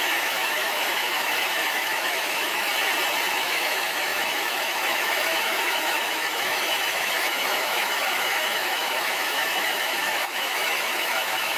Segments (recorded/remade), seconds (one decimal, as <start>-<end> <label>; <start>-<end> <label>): 0.0-2.7 remade; 2.7-3.4 recorded; 3.4-11.6 remade